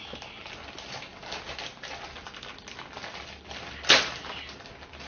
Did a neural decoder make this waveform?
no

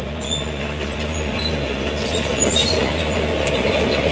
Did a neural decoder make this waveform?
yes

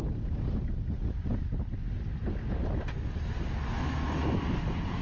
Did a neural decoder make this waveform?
no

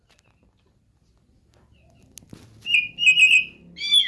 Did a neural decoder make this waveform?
no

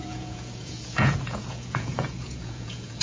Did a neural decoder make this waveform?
yes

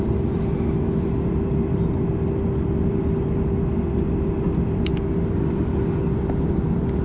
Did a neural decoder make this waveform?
no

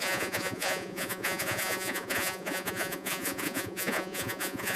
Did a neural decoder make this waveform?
yes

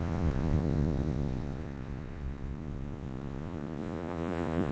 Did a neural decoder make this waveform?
yes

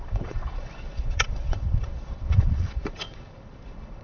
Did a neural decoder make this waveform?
yes